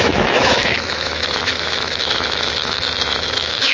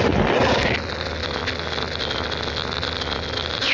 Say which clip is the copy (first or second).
first